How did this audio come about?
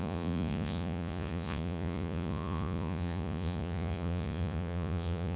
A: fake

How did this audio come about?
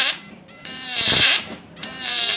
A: fake